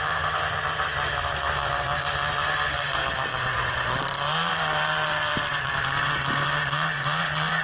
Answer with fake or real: fake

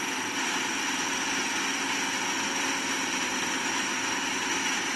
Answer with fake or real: real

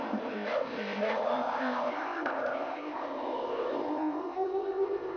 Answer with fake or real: fake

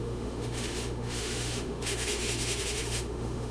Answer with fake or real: fake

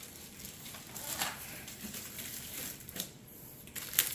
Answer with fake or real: fake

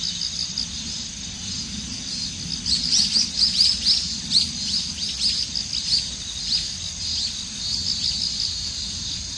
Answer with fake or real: real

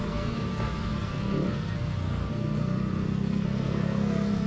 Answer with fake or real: fake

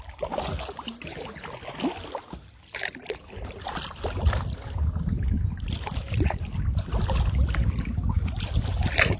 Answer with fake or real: real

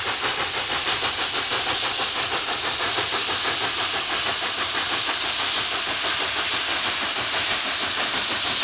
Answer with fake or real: real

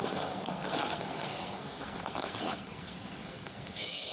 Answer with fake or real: fake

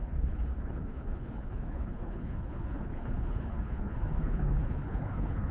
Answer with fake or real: fake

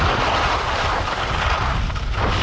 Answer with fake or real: real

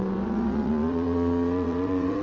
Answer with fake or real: fake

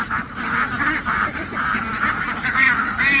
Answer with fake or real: fake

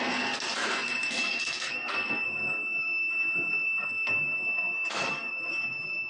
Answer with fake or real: fake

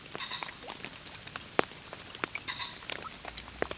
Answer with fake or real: fake